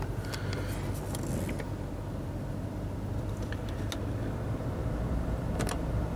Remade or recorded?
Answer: recorded